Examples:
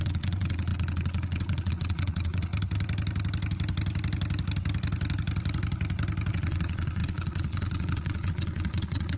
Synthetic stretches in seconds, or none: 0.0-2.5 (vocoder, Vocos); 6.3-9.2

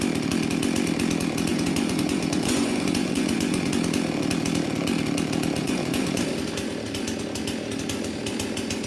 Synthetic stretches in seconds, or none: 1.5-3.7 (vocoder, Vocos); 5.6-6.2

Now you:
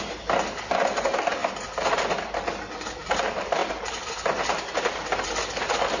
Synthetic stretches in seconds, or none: none

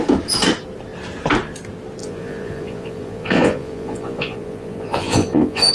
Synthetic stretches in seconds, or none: 2.0-5.7 (vocoder, Vocos)